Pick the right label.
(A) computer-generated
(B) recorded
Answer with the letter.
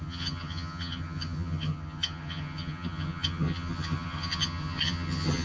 A